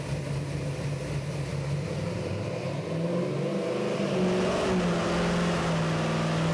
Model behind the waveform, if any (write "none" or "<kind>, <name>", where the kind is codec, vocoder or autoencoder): none